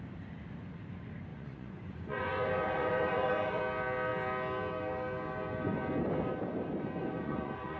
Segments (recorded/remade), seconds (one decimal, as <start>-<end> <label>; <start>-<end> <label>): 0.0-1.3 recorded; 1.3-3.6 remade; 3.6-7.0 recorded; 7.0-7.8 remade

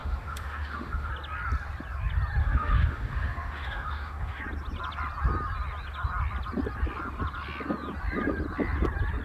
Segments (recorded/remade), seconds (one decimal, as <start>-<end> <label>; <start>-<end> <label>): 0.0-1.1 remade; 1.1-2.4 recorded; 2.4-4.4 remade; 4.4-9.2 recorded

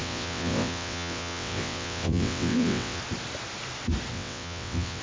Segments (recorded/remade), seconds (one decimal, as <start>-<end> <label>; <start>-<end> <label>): 0.0-3.0 remade; 3.0-4.1 recorded; 4.1-5.0 remade

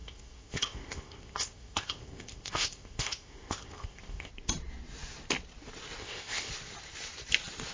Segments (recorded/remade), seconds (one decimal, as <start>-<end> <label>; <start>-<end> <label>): 0.0-4.3 remade; 4.3-6.0 recorded; 6.0-6.5 remade; 6.5-7.7 recorded

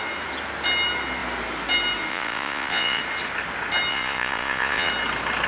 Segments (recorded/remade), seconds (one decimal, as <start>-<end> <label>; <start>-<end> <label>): 0.0-2.1 recorded; 2.1-3.0 remade; 3.0-3.9 recorded; 3.9-4.9 remade; 4.9-5.5 recorded

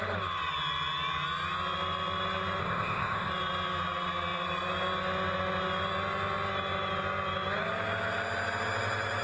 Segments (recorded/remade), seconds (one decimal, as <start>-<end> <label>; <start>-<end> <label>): 0.0-2.6 recorded; 2.6-3.3 remade; 3.3-9.2 recorded